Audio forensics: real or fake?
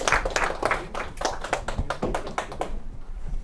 real